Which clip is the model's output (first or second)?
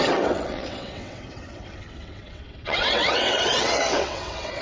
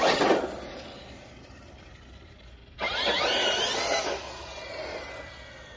first